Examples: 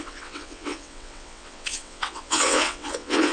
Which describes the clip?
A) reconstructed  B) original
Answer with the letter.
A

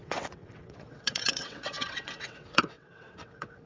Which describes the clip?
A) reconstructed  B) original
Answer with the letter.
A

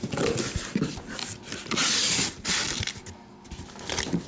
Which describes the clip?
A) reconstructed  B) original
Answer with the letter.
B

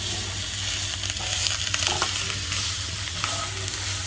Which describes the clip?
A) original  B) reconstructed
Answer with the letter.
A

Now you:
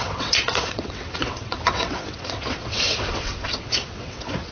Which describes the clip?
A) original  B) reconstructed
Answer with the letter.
B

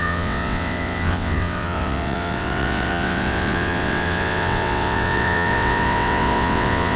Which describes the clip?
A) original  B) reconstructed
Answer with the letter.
B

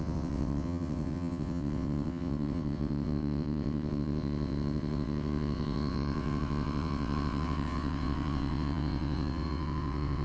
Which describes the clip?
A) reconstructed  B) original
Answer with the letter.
A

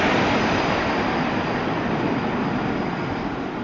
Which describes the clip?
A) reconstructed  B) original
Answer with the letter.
B